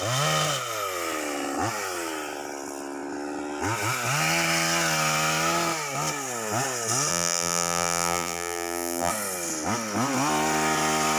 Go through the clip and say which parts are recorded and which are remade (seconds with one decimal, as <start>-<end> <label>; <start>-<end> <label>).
0.0-7.1 recorded; 7.1-9.1 remade; 9.1-11.2 recorded